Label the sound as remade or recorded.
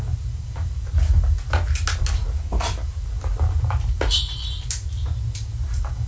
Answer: recorded